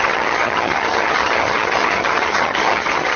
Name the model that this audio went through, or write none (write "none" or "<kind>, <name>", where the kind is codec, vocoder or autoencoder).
vocoder, HiFi-GAN